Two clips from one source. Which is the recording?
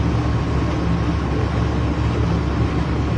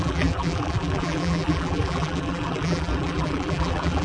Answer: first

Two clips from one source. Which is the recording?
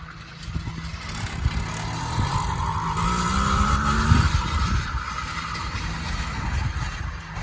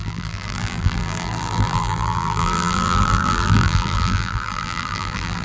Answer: first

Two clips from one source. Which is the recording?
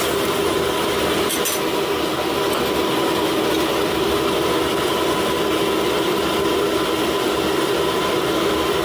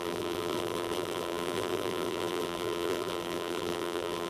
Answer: first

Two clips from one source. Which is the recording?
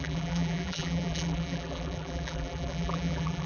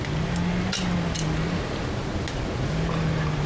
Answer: second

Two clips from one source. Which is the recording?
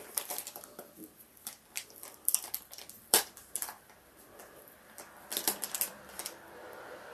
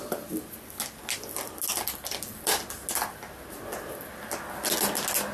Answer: second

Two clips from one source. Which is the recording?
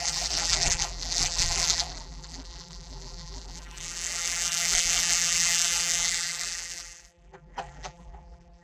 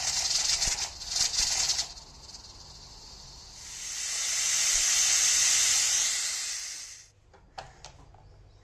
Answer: second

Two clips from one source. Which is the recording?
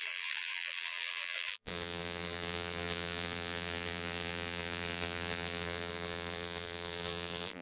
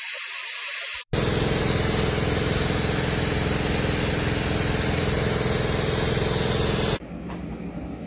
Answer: second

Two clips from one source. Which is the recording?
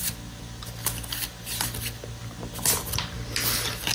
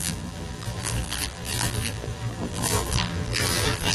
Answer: first